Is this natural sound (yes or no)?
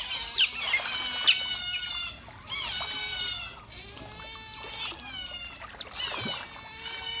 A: yes